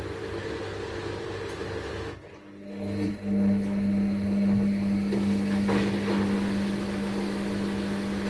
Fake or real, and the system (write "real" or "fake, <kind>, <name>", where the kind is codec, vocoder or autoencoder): real